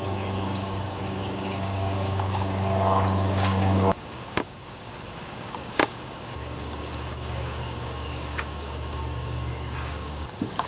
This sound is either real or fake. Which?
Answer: fake